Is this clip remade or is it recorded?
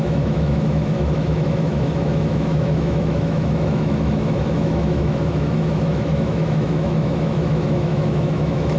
remade